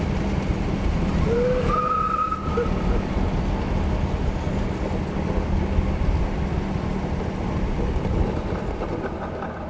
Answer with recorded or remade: recorded